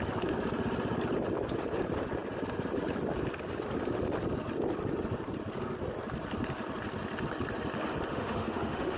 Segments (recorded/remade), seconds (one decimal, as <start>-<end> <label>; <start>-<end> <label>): 0.0-8.1 recorded; 8.1-9.0 remade